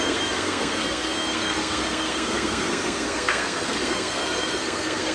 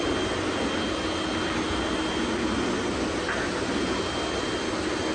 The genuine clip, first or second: second